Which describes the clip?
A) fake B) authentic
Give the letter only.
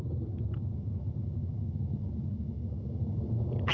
B